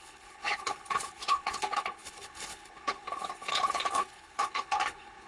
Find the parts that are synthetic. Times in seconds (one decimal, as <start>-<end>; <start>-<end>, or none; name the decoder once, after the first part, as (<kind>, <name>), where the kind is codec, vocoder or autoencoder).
0.0-5.3 (codec, HILCodec)